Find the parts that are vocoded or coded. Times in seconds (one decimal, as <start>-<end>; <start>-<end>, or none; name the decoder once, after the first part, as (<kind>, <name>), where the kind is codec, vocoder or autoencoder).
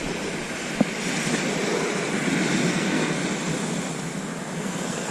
2.7-3.2 (codec, SNAC); 4.5-5.1